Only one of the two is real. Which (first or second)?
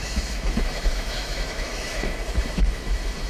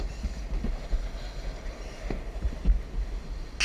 second